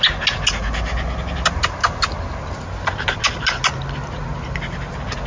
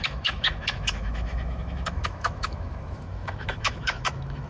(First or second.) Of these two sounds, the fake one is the second